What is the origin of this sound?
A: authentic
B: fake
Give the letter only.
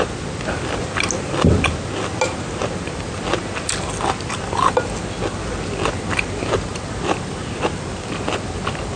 A